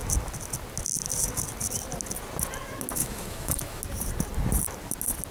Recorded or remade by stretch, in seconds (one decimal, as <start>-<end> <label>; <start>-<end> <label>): 0.0-3.0 recorded; 3.0-3.8 remade; 3.8-5.3 recorded